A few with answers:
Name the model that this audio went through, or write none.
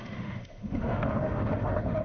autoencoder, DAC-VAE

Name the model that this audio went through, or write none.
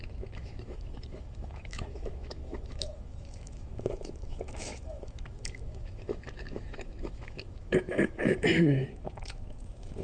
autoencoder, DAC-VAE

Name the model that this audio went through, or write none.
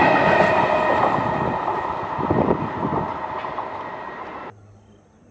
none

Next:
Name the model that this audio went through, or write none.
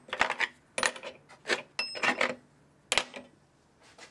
none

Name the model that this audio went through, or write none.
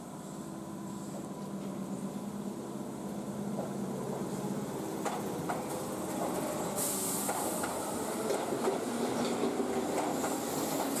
none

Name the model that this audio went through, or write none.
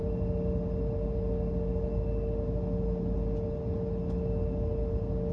none